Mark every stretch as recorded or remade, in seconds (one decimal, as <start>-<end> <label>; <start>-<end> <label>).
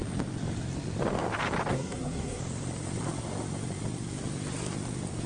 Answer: 0.0-1.7 recorded; 1.7-2.4 remade; 2.4-5.3 recorded